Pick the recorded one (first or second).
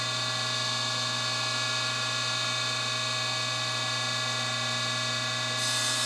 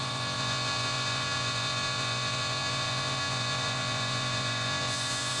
first